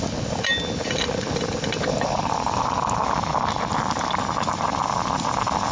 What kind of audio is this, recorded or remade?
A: recorded